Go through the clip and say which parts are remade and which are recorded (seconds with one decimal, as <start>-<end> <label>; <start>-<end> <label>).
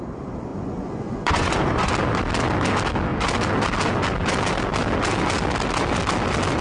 0.0-0.5 recorded; 0.5-1.9 remade; 1.9-6.6 recorded